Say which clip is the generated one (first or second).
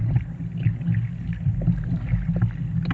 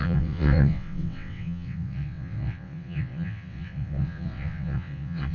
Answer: second